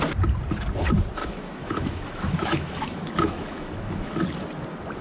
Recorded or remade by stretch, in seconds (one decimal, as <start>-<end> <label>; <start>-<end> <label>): 0.0-1.2 recorded; 1.2-4.2 remade; 4.2-5.0 recorded